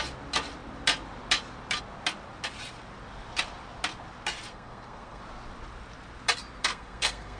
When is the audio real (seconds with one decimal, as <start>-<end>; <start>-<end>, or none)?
0.0-4.5; 5.2-6.6